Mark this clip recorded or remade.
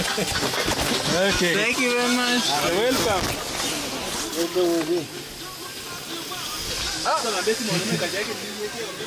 recorded